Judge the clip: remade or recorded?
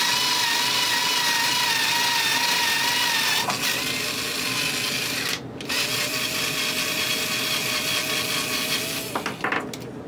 recorded